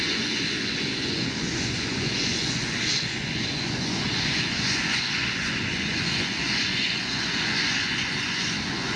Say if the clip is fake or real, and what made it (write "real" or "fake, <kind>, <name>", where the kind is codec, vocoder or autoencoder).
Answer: fake, vocoder, Vocos